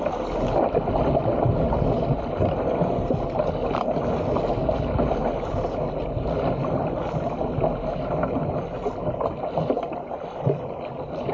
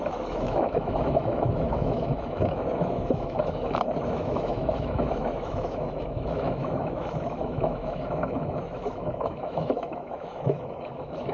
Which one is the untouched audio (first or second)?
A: first